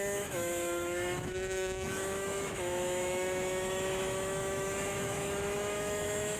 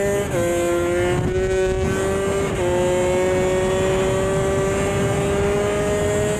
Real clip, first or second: second